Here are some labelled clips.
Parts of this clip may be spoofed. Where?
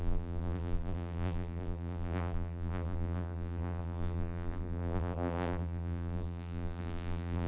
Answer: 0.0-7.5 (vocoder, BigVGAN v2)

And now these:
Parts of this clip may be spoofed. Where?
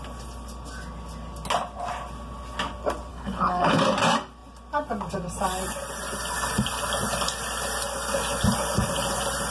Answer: 3.1-3.8 (codec, HILCodec)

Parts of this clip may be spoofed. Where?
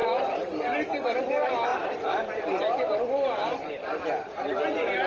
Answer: none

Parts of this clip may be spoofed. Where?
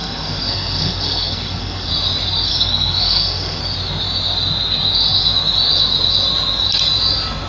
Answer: 0.0-1.9 (codec, SNAC); 2.5-3.6